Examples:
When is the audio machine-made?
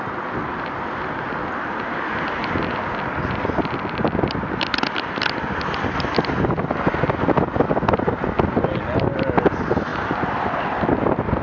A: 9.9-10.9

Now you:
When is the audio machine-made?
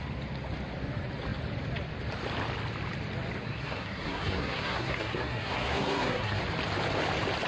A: 3.4-6.4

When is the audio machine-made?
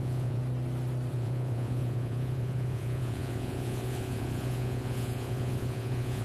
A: 0.0-0.4; 1.1-6.2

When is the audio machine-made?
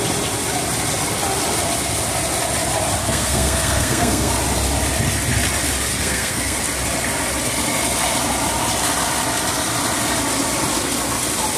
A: 3.0-4.3; 5.9-6.6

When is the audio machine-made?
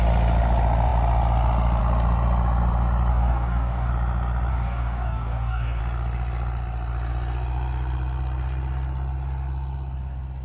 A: 3.1-3.9; 4.5-5.8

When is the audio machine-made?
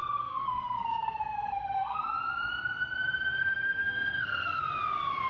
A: 0.0-2.0; 3.4-4.6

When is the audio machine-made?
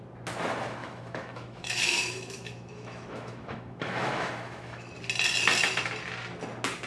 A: 0.8-4.9